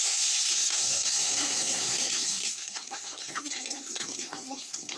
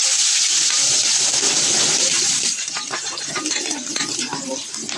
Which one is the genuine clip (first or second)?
second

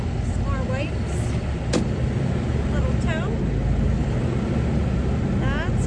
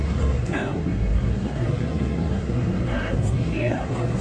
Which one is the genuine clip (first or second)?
first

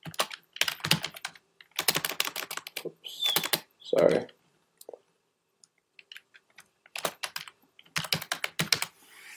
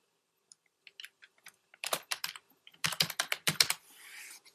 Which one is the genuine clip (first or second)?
first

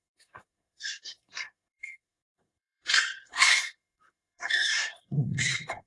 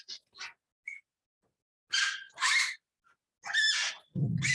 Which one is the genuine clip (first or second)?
second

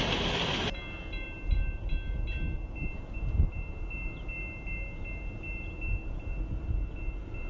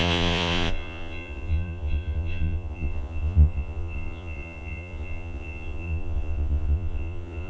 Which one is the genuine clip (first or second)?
first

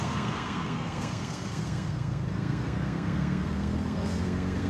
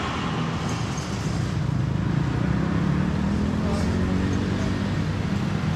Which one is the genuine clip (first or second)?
second